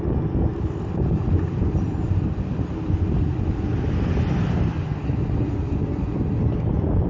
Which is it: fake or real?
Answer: real